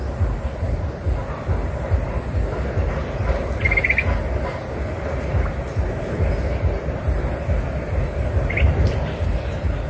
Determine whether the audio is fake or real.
real